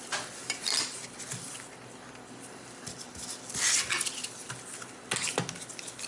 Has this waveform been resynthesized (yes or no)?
no